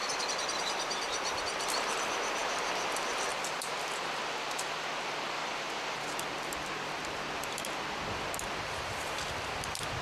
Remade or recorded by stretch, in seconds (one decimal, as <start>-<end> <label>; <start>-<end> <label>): 0.0-1.4 remade; 1.4-3.3 recorded; 3.3-4.5 remade; 4.5-5.4 recorded; 5.4-6.0 remade; 6.0-10.0 recorded